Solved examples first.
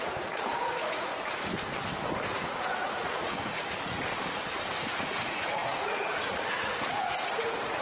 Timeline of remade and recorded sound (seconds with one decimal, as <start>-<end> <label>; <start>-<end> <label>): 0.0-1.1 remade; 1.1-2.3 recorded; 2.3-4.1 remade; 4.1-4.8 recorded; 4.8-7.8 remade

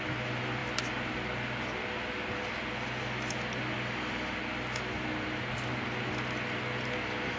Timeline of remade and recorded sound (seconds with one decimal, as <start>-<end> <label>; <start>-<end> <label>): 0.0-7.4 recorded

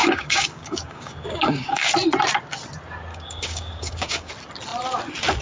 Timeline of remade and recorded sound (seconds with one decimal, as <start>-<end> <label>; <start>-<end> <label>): 0.0-1.9 remade; 1.9-3.1 recorded; 3.1-4.3 remade; 4.3-5.4 recorded

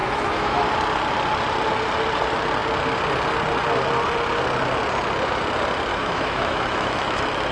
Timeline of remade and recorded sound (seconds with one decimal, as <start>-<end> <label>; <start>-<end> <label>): 0.0-0.6 remade; 0.6-5.9 recorded; 5.9-7.5 remade

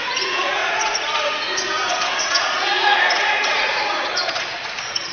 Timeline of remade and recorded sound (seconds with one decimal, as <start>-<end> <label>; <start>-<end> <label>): 0.0-5.1 remade

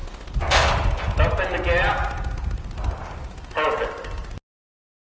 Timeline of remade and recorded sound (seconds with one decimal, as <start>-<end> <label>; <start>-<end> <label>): 0.0-5.0 recorded

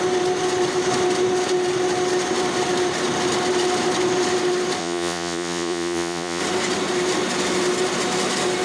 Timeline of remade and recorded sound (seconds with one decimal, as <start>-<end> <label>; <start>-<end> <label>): 0.0-4.8 recorded; 4.8-6.4 remade; 6.4-8.6 recorded

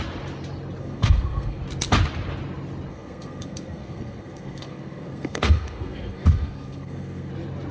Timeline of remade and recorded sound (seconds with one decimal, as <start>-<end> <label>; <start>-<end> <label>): 0.0-0.8 recorded; 0.8-1.6 remade; 1.6-2.9 recorded; 2.9-7.3 remade; 7.3-7.7 recorded